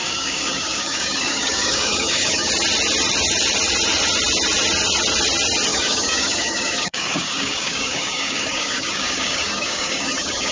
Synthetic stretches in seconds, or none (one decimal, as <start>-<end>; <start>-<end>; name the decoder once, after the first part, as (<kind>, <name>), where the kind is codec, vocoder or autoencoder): 0.0-2.5 (codec, DAC); 5.7-10.5